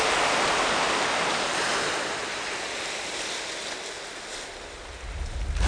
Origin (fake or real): real